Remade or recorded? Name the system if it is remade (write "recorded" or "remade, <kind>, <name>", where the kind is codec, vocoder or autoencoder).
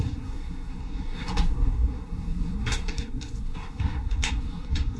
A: remade, codec, SNAC